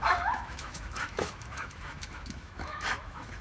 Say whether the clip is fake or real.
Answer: fake